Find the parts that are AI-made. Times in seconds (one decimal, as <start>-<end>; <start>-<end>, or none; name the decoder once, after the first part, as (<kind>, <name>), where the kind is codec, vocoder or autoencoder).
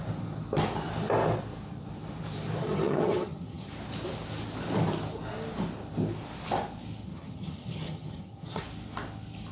2.6-3.7 (vocoder, HiFi-GAN); 7.0-8.6